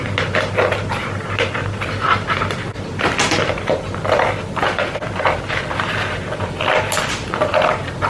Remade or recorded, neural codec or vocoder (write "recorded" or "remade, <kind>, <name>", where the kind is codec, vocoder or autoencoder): remade, vocoder, BigVGAN v2